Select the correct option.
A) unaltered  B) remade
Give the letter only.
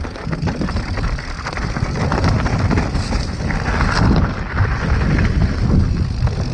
A